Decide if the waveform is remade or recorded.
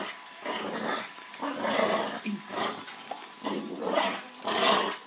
recorded